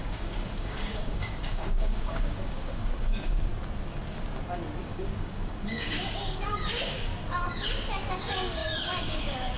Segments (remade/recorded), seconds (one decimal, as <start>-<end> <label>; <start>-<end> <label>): 0.0-3.5 remade; 3.5-4.8 recorded; 4.8-7.1 remade; 7.1-8.1 recorded; 8.1-9.6 remade